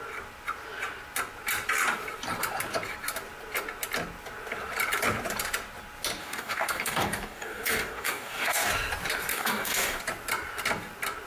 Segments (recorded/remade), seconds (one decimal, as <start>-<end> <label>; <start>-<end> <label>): 0.0-6.2 recorded; 6.2-8.7 remade; 8.7-9.3 recorded; 9.3-10.0 remade; 10.0-11.3 recorded